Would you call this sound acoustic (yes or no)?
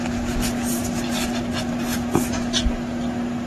yes